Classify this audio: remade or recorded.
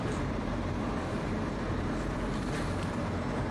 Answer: remade